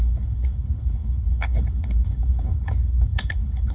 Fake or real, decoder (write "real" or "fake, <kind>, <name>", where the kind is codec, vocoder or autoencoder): fake, codec, HILCodec